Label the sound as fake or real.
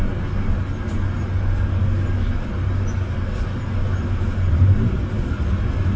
real